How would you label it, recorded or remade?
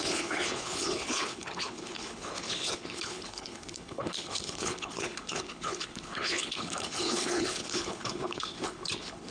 remade